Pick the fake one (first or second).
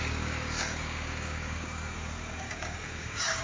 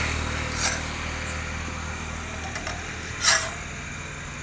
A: first